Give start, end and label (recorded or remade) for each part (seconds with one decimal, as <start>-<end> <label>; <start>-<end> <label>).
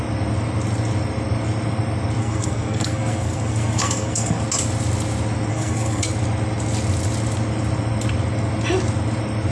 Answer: 0.0-2.2 recorded; 2.2-4.4 remade; 4.4-5.5 recorded; 5.5-6.1 remade; 6.1-9.5 recorded